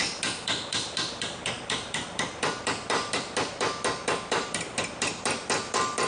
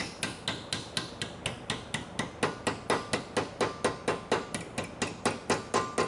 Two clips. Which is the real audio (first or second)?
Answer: second